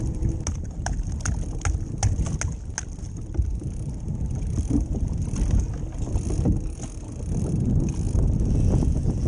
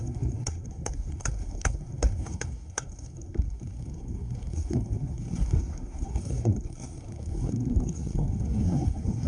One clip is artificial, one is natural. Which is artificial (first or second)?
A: second